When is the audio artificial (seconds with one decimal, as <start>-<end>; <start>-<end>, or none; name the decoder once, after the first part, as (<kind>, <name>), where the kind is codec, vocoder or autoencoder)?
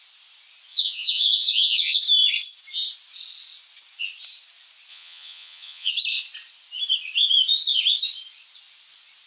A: 0.7-2.0 (vocoder, Vocos); 4.9-5.9